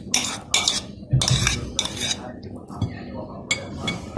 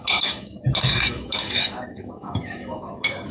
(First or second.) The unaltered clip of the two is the first